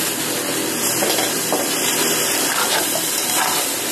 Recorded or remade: remade